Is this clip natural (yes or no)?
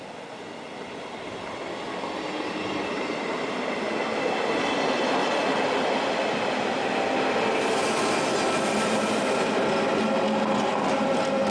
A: yes